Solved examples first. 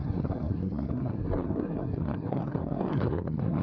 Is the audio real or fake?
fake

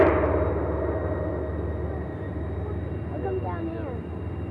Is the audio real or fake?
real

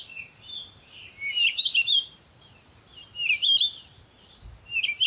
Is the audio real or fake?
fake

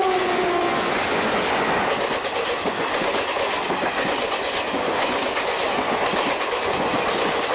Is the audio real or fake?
fake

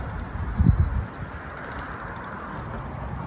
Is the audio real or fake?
real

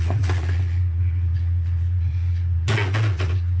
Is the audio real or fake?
fake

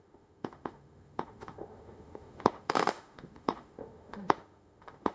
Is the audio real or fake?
fake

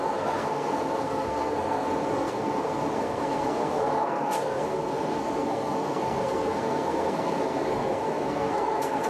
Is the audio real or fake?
fake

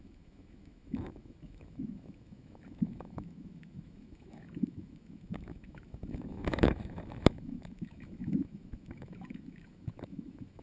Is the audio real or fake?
fake